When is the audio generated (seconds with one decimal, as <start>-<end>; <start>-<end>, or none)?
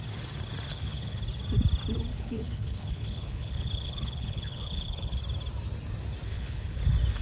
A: 0.7-1.2; 2.1-5.2; 6.3-6.8